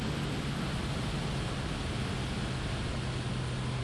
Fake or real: real